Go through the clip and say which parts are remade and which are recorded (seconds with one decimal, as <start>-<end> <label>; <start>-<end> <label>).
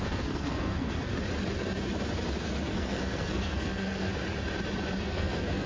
0.0-1.1 remade; 1.1-2.4 recorded; 2.4-4.1 remade; 4.1-5.0 recorded; 5.0-5.7 remade